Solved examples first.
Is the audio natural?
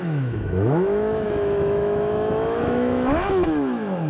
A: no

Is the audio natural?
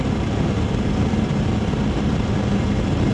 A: yes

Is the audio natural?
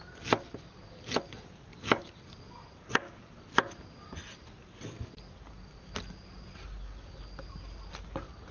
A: yes